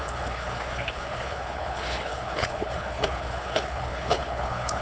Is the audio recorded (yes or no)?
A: no